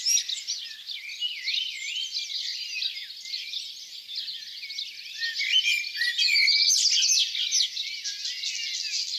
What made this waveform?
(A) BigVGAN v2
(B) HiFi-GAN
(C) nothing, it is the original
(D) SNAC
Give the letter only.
C